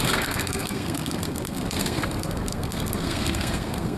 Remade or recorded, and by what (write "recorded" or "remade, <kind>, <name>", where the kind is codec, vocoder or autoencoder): remade, codec, SNAC